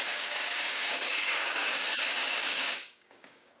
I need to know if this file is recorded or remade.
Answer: remade